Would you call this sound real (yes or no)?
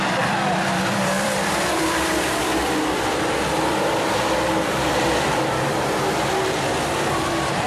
no